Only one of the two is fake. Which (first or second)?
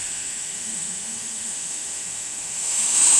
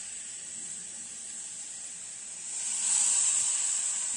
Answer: first